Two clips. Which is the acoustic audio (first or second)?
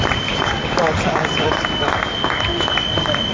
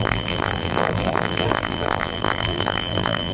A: first